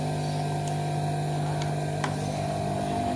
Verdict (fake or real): real